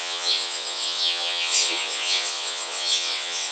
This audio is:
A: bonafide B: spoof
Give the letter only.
B